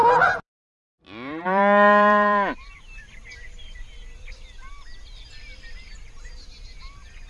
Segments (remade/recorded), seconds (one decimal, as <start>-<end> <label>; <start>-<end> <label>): 0.0-3.9 remade; 3.9-7.3 recorded